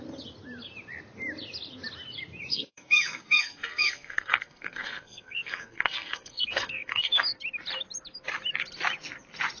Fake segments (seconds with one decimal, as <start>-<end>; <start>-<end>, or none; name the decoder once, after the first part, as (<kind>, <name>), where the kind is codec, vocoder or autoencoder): 2.5-7.2 (codec, SNAC)